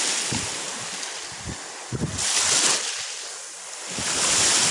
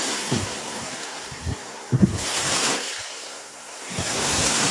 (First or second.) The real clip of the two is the first